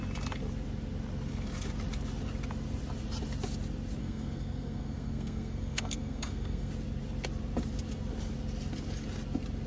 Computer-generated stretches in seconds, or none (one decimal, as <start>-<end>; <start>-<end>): 4.0-6.7